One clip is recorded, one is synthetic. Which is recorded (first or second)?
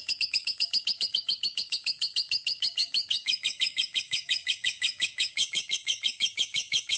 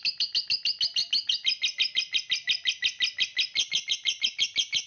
second